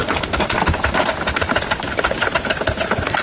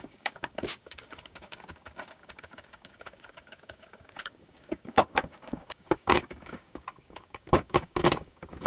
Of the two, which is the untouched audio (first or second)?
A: first